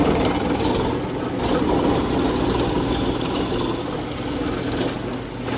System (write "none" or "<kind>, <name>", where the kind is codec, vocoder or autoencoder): none